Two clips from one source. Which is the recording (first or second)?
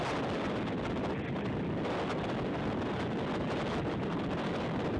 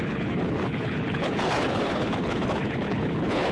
first